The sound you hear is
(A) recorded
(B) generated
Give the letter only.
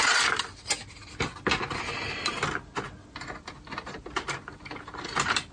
A